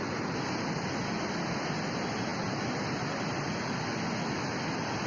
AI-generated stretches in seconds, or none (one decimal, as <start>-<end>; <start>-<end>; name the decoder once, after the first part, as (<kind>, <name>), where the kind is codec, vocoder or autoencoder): none